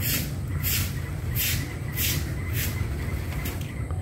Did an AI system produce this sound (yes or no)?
no